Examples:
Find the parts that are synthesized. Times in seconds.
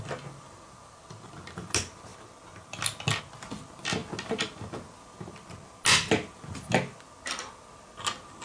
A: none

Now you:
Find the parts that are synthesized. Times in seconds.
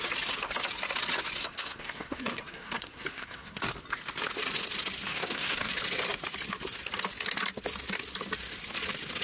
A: 1.4-3.6; 5.1-5.7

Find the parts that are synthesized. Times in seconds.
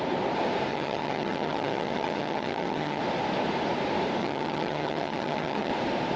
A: 0.7-3.0; 4.2-5.7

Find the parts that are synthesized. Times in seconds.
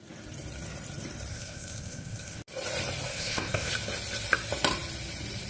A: 1.3-2.4; 3.1-3.7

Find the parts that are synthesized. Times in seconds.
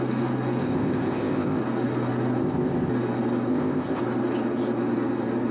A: 0.6-1.6; 2.4-2.9; 3.5-4.0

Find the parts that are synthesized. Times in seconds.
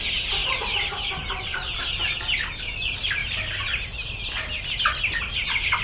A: 0.4-0.9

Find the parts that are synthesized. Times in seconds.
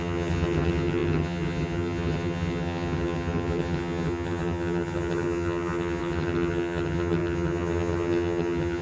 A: 0.0-8.8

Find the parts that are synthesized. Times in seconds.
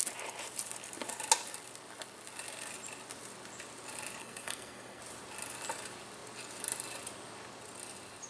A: 4.2-5.0